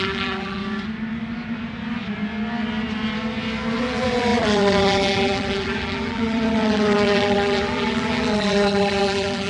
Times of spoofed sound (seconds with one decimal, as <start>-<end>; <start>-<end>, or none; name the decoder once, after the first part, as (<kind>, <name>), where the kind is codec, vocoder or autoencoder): 0.0-0.6 (vocoder, BigVGAN v2); 3.8-9.5